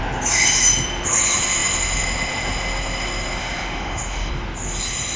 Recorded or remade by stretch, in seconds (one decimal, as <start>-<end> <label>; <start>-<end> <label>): 0.0-3.4 recorded; 3.4-4.3 remade; 4.3-5.2 recorded